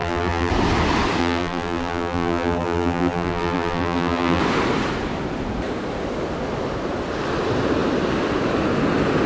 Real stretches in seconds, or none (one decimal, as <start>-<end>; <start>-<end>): 0.5-1.2; 4.4-9.3